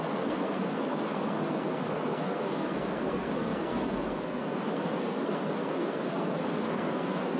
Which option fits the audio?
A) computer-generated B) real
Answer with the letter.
A